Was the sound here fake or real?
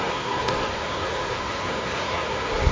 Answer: fake